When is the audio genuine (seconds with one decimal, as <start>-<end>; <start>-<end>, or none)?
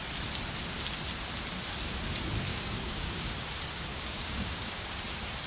0.0-2.5; 3.5-3.9; 4.9-5.5